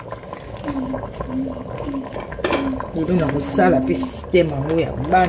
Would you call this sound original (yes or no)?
yes